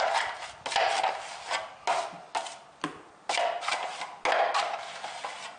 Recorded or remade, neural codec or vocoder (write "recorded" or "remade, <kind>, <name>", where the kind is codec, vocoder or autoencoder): recorded